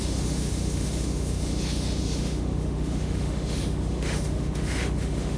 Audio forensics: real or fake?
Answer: fake